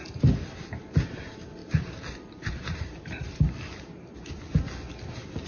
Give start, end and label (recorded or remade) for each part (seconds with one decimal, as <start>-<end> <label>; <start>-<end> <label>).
0.0-0.4 recorded; 0.4-0.9 remade; 0.9-1.6 recorded; 1.6-3.8 remade; 3.8-5.5 recorded